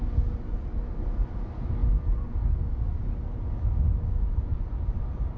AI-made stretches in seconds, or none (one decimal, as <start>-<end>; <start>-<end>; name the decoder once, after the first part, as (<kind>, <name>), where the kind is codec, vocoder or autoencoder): none